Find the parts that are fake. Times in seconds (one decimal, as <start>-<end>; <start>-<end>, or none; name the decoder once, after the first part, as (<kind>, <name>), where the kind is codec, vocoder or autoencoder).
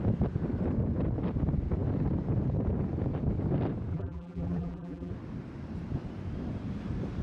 3.9-5.1 (vocoder, BigVGAN v2)